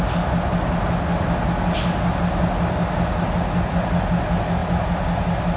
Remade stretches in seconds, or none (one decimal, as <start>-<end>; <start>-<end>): none